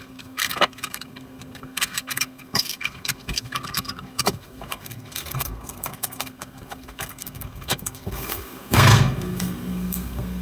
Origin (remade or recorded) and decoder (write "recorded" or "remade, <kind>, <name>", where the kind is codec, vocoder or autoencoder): remade, codec, SNAC